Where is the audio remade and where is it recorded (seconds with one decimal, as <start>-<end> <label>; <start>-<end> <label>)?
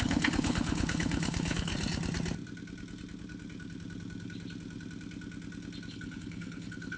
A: 0.0-1.7 remade; 1.7-5.9 recorded; 5.9-7.0 remade